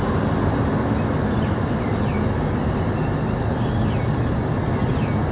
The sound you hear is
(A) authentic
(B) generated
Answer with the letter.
A